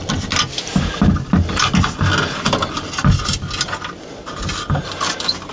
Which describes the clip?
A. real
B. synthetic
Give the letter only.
A